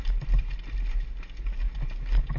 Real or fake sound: real